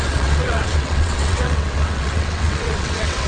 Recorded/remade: remade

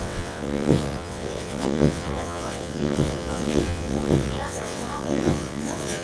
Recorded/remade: remade